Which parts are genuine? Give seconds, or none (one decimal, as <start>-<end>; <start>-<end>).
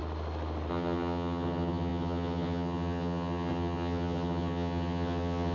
0.0-0.7